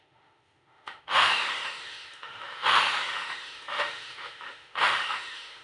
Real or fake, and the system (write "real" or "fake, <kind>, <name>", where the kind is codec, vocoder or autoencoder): fake, autoencoder, DAC-VAE